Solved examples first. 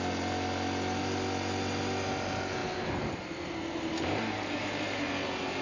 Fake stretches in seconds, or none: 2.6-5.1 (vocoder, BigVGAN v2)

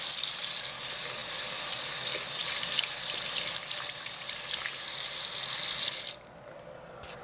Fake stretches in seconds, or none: none

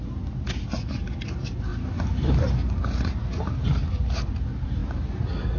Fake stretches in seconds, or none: none

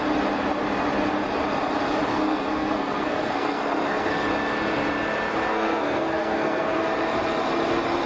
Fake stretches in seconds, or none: 2.1-4.1 (codec, SNAC); 5.5-6.8